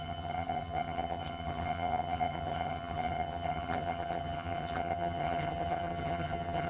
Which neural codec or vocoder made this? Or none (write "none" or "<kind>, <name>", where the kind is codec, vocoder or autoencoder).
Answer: vocoder, HiFi-GAN